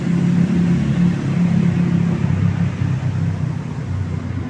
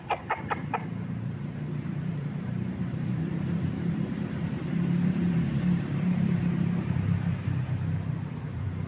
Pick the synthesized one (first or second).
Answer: second